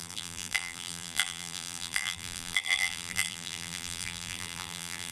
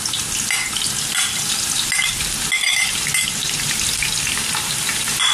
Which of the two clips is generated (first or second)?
first